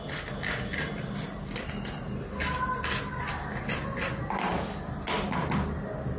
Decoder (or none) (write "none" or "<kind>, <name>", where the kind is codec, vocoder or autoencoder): none